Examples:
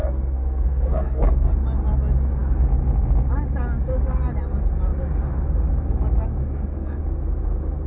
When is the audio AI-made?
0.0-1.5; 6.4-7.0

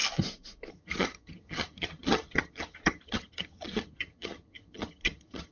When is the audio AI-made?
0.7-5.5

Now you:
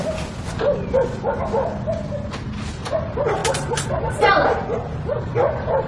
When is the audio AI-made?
none

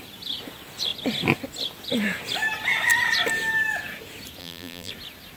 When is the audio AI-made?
4.4-4.9

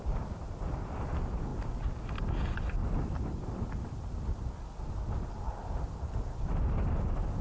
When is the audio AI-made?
none